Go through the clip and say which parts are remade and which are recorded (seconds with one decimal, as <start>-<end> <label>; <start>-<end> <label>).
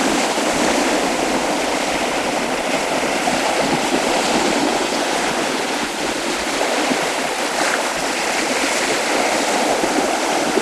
0.0-4.7 recorded; 4.7-6.3 remade; 6.3-10.6 recorded